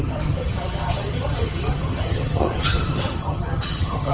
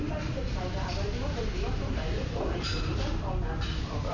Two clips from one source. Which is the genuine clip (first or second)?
second